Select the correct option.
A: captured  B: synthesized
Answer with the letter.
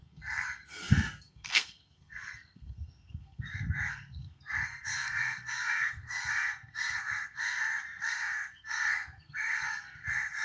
B